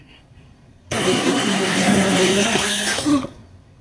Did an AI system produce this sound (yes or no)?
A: yes